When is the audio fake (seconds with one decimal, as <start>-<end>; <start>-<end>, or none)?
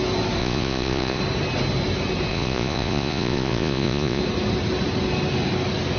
0.4-1.2; 2.3-4.2